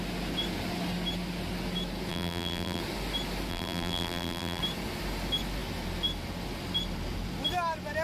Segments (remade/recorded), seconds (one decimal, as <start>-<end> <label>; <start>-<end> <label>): 0.0-2.1 recorded; 2.1-2.8 remade; 2.8-3.5 recorded; 3.5-4.6 remade; 4.6-8.0 recorded